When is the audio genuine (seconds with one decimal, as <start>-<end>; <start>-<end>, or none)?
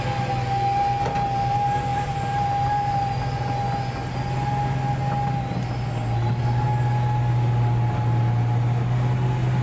0.0-9.6